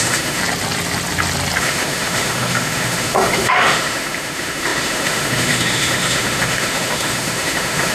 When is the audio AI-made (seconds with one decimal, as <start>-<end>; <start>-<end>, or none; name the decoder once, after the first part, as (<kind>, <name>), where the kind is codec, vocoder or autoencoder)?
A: 0.0-0.4 (autoencoder, DAC-VAE); 1.6-7.9